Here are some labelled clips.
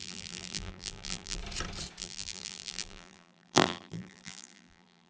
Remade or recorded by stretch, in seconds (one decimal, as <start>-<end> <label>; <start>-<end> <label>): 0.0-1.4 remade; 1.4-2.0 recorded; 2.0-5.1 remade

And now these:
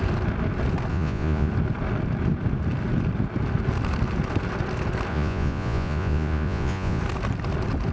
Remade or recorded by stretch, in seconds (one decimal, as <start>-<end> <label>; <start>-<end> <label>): 0.0-0.9 recorded; 0.9-1.5 remade; 1.5-5.1 recorded; 5.1-7.0 remade; 7.0-7.9 recorded

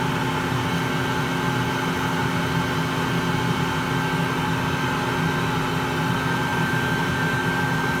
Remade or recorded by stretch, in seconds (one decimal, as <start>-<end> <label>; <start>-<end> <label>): 0.0-6.5 recorded; 6.5-7.1 remade; 7.1-8.0 recorded

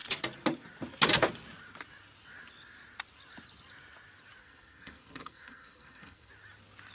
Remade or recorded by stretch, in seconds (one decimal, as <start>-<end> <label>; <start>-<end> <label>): 0.0-4.4 recorded; 4.4-6.3 remade; 6.3-6.9 recorded

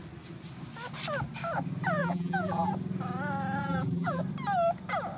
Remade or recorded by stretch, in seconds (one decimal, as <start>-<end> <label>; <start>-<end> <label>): 0.0-2.0 recorded; 2.0-2.7 remade; 2.7-3.6 recorded; 3.6-4.2 remade; 4.2-5.2 recorded